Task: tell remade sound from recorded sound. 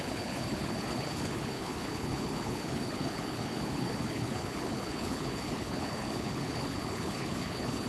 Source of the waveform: remade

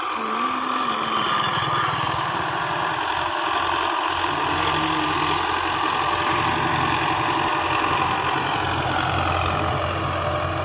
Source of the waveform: recorded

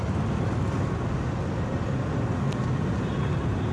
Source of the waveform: recorded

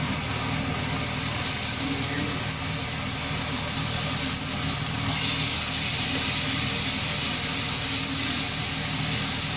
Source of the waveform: recorded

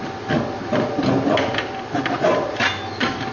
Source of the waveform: recorded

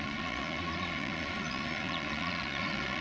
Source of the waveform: remade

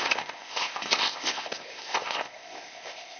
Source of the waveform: remade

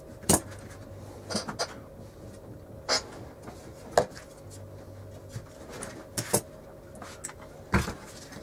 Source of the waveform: recorded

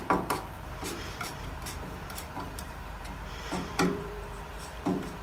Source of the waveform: remade